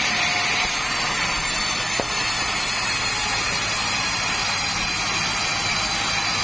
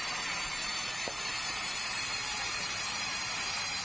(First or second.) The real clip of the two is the first